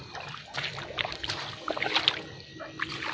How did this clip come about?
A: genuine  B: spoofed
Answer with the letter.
A